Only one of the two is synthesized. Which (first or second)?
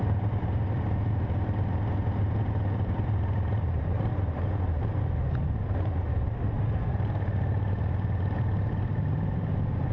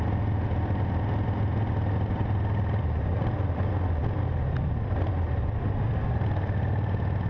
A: first